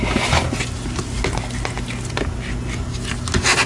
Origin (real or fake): real